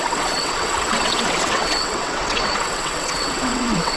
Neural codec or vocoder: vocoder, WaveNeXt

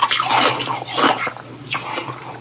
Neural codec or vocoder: none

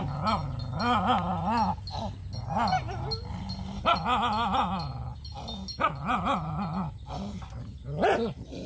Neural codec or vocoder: none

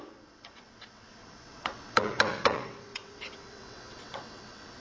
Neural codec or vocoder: vocoder, WaveNeXt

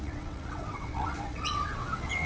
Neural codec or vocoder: vocoder, WaveNeXt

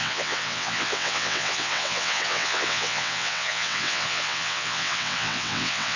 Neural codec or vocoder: vocoder, WaveNeXt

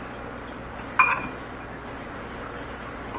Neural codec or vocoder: none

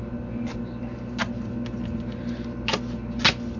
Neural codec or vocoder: none